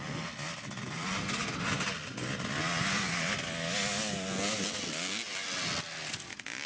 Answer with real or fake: real